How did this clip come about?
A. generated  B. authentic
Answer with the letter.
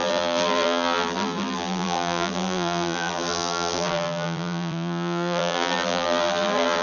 A